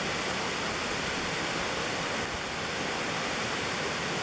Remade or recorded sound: recorded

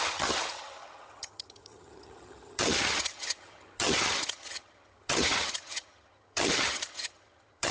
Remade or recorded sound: remade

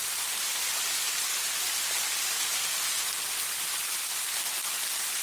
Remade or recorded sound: recorded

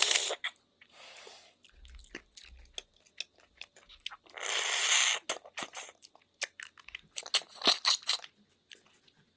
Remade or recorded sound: recorded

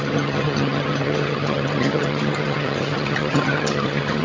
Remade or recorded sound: remade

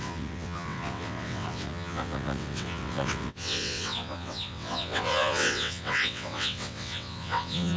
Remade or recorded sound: remade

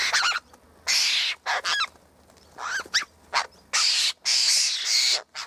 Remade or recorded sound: recorded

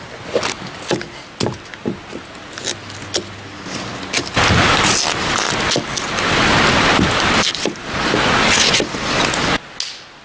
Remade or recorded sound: recorded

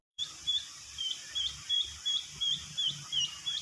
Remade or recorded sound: remade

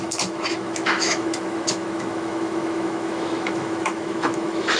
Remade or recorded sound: remade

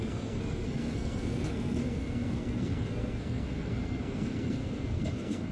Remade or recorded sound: remade